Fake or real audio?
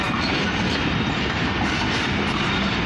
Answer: real